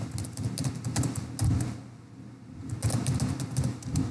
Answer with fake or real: real